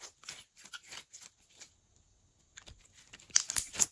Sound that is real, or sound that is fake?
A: real